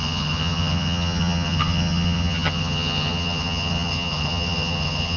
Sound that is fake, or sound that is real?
fake